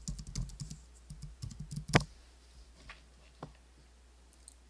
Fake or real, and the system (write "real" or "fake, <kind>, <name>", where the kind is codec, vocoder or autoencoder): real